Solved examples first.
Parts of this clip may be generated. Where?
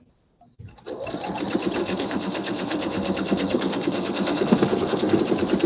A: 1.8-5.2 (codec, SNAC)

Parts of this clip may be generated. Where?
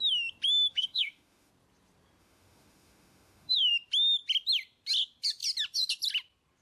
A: 0.7-1.5 (autoencoder, DAC-VAE); 2.2-3.7